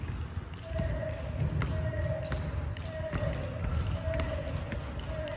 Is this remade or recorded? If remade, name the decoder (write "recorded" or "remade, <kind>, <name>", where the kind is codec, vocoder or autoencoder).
recorded